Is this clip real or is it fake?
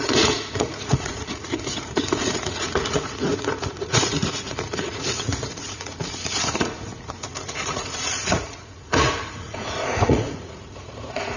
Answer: fake